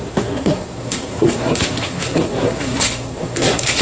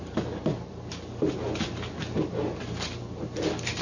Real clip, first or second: second